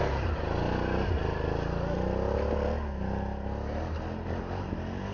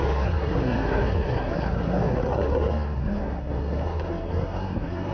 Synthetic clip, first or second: second